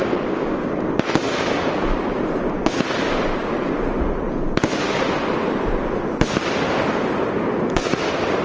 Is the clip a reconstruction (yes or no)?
no